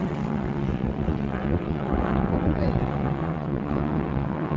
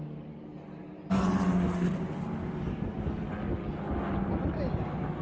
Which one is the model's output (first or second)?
first